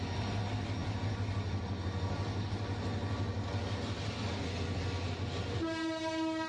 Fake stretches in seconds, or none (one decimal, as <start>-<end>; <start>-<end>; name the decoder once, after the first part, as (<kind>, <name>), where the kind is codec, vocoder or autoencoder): none